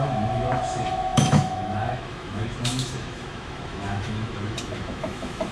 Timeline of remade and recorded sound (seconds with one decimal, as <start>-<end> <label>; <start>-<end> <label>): 0.0-5.5 remade